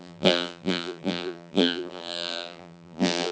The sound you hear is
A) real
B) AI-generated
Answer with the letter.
B